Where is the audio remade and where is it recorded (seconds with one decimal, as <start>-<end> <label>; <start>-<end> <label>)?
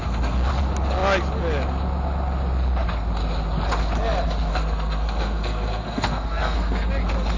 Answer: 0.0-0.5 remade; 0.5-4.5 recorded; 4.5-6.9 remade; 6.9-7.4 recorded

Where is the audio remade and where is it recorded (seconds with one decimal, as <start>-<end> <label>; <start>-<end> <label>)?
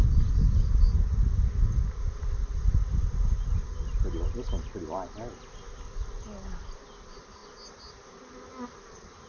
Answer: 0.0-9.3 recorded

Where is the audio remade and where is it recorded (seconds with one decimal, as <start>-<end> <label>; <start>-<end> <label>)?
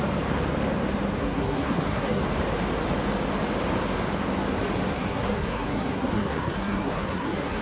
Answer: 0.0-1.2 recorded; 1.2-2.2 remade; 2.2-4.9 recorded; 4.9-7.6 remade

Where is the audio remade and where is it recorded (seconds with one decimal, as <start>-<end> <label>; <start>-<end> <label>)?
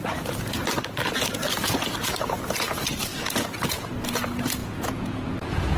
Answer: 0.0-4.6 recorded; 4.6-5.8 remade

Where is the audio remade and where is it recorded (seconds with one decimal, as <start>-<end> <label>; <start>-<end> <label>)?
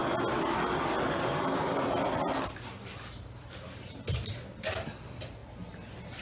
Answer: 0.0-1.7 recorded; 1.7-5.4 remade; 5.4-6.2 recorded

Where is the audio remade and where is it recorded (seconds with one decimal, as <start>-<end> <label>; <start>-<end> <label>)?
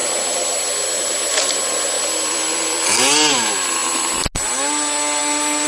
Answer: 0.0-5.7 recorded